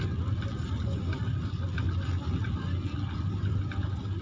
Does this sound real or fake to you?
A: real